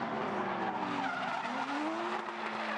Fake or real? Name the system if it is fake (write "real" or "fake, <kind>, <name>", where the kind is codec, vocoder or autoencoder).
real